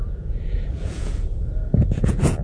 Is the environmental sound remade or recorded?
remade